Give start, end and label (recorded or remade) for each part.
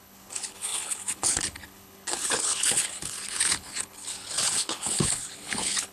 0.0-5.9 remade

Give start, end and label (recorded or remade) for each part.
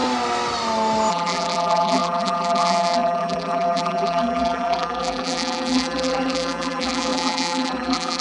0.0-1.1 recorded; 1.1-8.2 remade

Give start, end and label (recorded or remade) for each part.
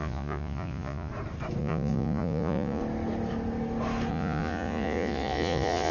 0.0-1.1 remade; 1.1-1.6 recorded; 1.6-2.8 remade; 2.8-4.1 recorded; 4.1-5.9 remade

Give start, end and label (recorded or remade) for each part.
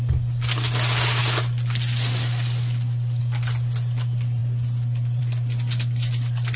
0.0-6.6 recorded